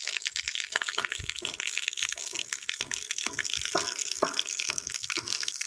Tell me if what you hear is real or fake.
fake